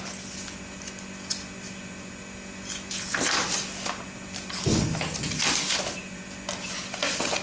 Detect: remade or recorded recorded